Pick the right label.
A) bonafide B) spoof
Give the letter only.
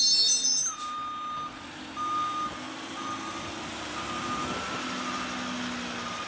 A